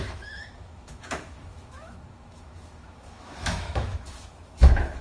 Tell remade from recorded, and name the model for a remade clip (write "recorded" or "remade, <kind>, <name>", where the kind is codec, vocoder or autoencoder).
remade, autoencoder, DAC-VAE